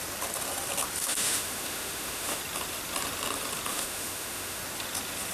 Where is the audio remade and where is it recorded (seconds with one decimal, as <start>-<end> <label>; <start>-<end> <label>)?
0.0-1.0 recorded; 1.0-2.4 remade; 2.4-3.7 recorded; 3.7-4.6 remade; 4.6-5.3 recorded